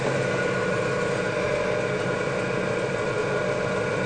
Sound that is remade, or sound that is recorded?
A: recorded